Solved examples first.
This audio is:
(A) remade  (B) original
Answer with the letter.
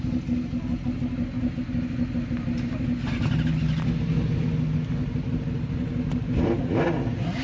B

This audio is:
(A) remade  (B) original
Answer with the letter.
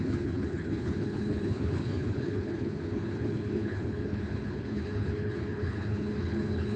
A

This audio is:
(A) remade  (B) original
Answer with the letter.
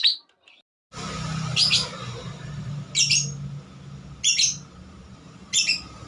B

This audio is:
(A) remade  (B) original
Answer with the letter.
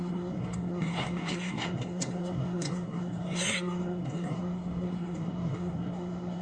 A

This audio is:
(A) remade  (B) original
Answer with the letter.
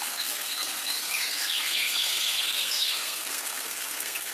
A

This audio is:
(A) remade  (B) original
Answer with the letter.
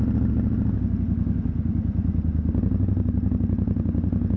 B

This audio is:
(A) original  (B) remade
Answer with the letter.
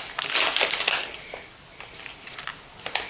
A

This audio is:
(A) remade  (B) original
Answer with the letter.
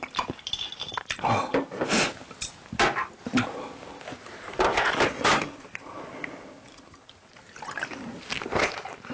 B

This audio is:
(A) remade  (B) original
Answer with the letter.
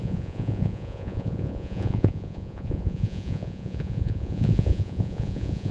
A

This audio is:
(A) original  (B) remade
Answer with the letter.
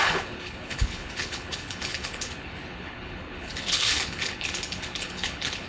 B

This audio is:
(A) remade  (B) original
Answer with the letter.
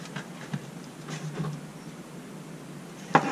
B